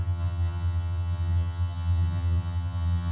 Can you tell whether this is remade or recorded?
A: remade